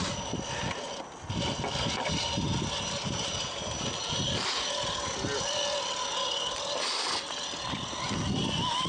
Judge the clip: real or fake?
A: real